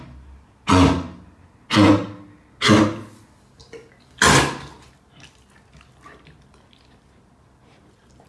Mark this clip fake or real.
real